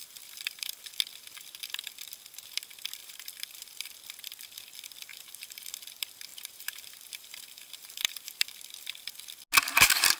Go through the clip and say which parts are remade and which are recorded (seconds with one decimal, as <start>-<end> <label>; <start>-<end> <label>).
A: 0.0-0.9 remade; 0.9-3.0 recorded; 3.0-3.9 remade; 3.9-5.1 recorded; 5.1-5.7 remade; 5.7-6.3 recorded; 6.3-8.9 remade; 8.9-10.2 recorded